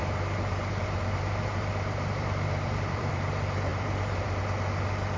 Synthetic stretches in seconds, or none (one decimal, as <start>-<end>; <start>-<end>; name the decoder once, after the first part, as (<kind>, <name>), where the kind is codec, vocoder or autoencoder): 0.0-3.1 (vocoder, BigVGAN v2); 3.7-4.4